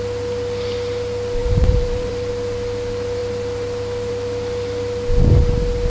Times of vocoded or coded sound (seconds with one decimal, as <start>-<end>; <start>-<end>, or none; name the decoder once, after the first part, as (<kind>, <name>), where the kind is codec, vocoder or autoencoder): 1.4-2.3 (vocoder, BigVGAN v2)